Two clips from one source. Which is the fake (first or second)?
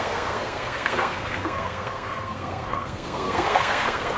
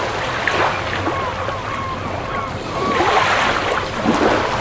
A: first